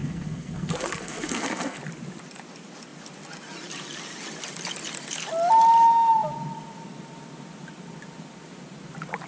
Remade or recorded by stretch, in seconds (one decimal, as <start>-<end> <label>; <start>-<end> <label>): 0.0-1.8 remade; 1.8-9.3 recorded